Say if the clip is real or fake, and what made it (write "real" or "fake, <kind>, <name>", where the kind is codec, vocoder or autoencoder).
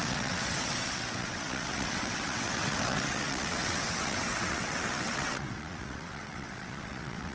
fake, vocoder, WaveNeXt